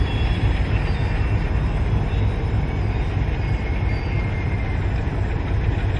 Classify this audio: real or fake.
real